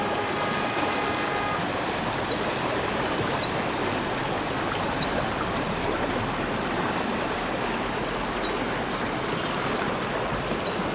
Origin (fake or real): real